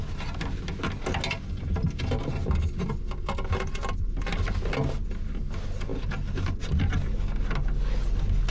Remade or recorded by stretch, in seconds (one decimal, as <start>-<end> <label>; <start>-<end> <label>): 0.0-8.5 recorded